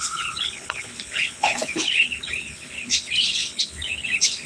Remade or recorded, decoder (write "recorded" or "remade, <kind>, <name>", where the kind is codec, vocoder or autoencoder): remade, codec, HILCodec